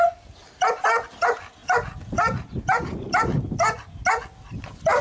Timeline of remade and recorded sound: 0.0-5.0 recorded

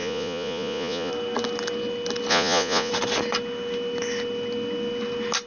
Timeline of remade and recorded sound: 0.0-1.1 remade; 1.1-2.3 recorded; 2.3-2.9 remade; 2.9-5.5 recorded